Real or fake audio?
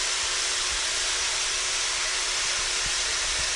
fake